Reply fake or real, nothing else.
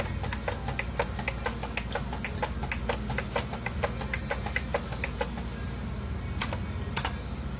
real